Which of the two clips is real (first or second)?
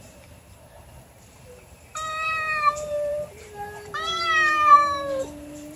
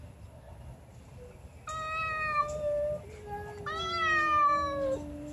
second